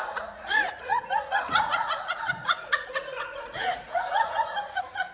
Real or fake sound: fake